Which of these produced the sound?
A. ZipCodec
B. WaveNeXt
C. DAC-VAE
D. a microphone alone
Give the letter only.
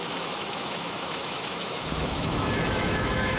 C